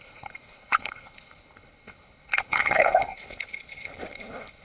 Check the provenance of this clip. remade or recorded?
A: remade